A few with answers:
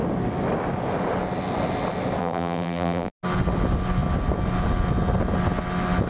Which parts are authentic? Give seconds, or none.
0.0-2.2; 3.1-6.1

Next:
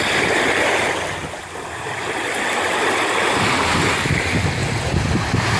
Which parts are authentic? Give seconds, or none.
0.0-2.8; 3.4-4.6